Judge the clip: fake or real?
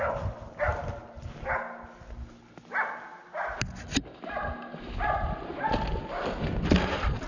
real